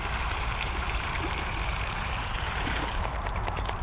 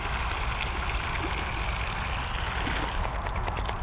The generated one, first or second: first